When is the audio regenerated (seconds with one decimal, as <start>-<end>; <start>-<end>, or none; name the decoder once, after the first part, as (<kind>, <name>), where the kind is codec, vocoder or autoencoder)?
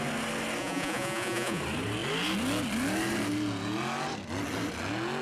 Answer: 0.6-1.6 (vocoder, Vocos)